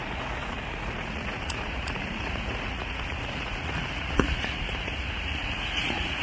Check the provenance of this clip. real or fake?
fake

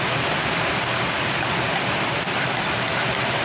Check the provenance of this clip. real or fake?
real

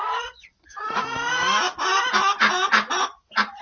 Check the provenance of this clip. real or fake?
real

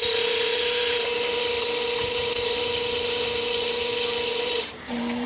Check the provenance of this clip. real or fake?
fake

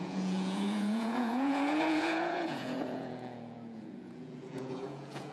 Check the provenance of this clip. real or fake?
fake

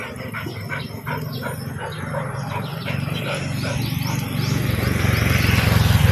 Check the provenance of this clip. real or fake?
real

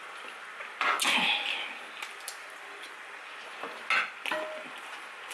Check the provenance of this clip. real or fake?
real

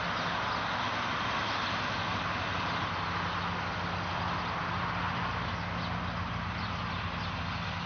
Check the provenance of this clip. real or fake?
real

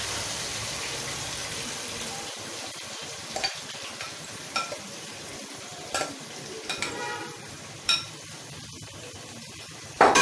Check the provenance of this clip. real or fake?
fake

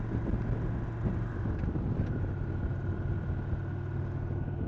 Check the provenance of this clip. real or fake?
real